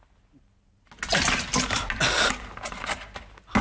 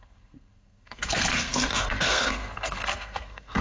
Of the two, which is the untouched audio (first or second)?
first